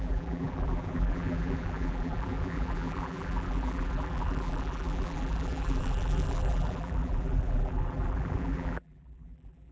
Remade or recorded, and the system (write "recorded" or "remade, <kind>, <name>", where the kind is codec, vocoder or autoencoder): remade, vocoder, BigVGAN v2